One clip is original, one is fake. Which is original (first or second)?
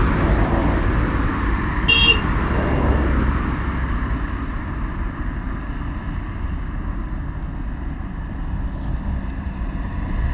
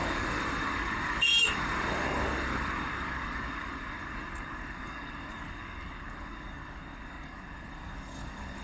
first